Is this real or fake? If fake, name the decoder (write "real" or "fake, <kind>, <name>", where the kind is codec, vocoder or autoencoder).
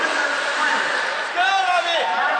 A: fake, vocoder, BigVGAN v2